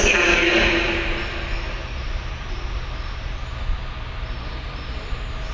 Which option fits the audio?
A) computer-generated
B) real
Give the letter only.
B